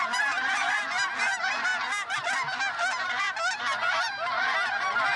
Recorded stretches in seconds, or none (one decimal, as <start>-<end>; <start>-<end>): 0.0-5.2